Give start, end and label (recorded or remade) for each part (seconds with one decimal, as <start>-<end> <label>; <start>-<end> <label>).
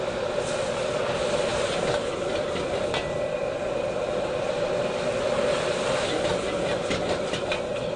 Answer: 0.0-8.0 recorded